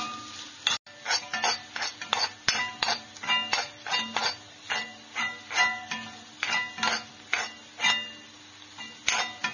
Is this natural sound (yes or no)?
yes